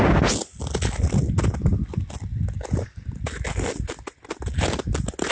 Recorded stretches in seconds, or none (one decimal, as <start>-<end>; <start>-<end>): 0.0-5.3